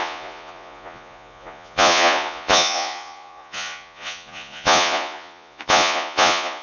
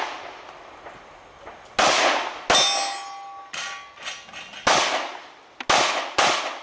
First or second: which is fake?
first